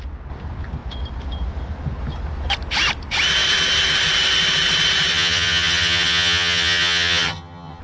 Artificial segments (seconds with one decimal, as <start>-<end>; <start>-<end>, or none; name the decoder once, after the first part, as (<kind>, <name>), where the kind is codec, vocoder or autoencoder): 5.1-7.8 (vocoder, HiFi-GAN)